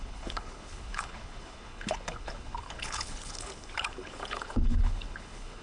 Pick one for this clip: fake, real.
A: fake